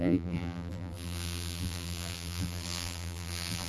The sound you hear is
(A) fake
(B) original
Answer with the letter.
A